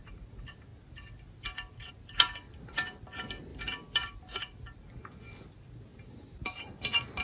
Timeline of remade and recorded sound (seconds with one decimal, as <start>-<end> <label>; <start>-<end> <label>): 0.0-3.5 recorded; 3.5-4.2 remade; 4.2-5.9 recorded; 5.9-6.8 remade; 6.8-7.2 recorded